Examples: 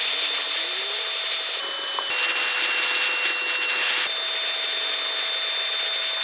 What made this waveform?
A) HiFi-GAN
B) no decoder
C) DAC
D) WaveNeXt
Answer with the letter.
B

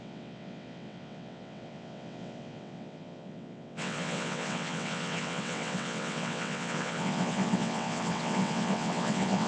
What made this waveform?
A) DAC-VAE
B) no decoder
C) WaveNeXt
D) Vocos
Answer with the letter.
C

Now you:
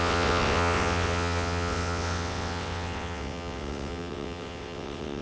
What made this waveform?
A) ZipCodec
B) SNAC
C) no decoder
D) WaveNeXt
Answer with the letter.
D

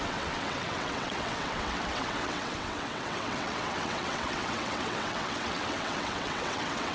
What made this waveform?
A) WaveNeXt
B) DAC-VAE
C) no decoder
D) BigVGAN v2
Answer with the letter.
A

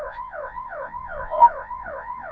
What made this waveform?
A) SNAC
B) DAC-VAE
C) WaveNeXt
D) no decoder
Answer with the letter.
C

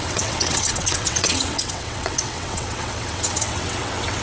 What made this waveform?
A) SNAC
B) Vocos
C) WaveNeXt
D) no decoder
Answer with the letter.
C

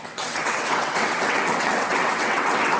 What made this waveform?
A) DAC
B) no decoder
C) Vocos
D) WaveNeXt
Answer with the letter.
D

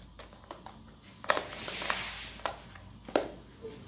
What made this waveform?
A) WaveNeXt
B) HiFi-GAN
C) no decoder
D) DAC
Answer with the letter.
C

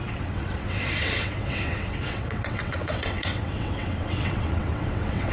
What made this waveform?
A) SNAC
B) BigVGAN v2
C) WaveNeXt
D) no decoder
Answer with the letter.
C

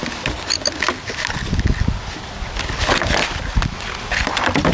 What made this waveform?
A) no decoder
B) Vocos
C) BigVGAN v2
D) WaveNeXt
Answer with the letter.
A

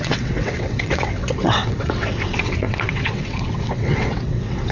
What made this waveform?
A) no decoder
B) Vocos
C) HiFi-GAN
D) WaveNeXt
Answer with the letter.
D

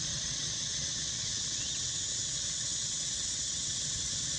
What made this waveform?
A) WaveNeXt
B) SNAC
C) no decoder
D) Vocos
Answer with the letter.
A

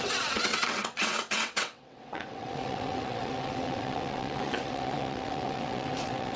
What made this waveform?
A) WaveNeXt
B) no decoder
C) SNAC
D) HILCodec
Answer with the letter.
A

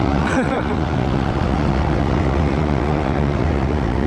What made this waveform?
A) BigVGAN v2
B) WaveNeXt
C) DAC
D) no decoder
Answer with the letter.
B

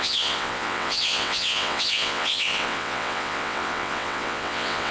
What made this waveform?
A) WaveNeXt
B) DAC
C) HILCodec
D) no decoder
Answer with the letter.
A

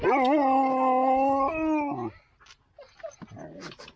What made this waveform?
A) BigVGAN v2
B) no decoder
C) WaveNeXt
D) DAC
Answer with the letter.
B